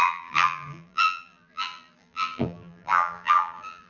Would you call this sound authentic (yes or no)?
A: no